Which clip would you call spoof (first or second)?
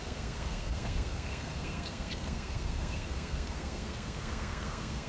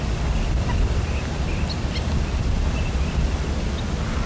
first